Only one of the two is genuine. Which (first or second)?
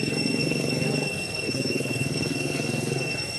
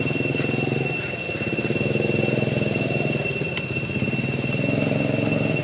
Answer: second